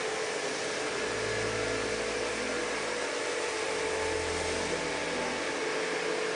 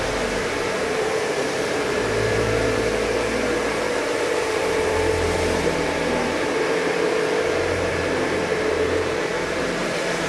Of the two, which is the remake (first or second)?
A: second